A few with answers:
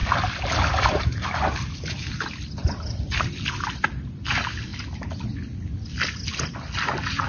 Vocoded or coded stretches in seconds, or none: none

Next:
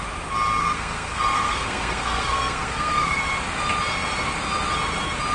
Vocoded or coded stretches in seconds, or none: 0.6-3.2 (codec, SNAC)

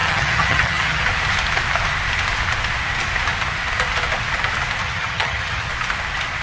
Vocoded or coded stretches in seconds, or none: 0.0-1.0 (vocoder, HiFi-GAN); 4.8-5.7

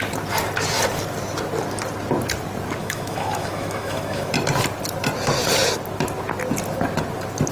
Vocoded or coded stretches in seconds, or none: 2.8-4.3 (autoencoder, DAC-VAE)

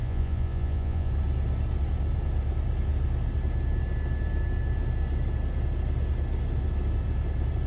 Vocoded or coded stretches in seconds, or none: 0.0-1.1 (vocoder, Vocos)

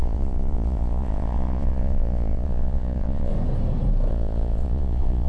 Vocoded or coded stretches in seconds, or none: 0.0-3.3 (vocoder, Vocos); 4.1-5.3